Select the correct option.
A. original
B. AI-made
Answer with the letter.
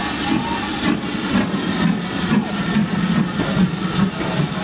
A